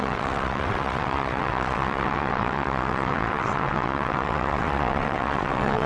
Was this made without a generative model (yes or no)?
no